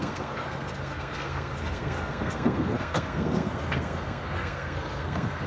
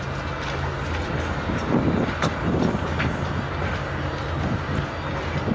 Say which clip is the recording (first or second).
second